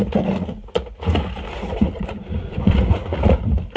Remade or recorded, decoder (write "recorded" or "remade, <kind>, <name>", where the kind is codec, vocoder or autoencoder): remade, vocoder, Vocos